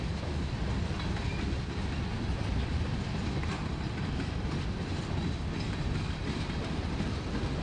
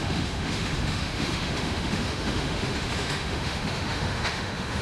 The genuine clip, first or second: first